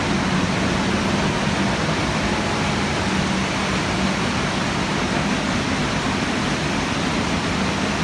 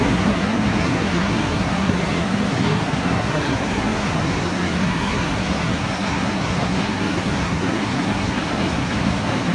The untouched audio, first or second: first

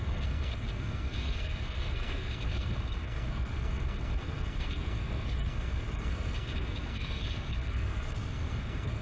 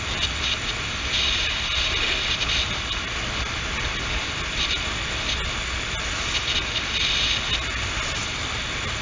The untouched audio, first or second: second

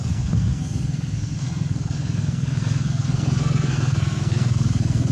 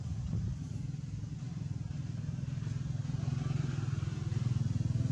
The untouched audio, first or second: second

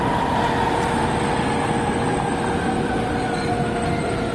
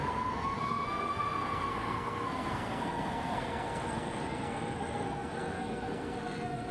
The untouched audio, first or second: first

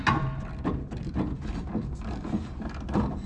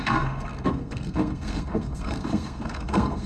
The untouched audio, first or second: first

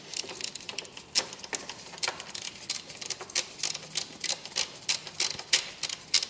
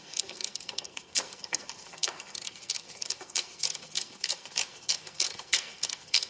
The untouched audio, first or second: first